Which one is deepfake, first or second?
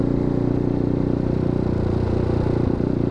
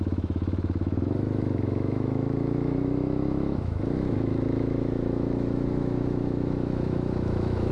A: second